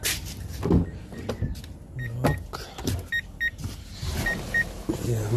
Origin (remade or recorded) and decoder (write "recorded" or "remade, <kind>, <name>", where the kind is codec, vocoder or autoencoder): recorded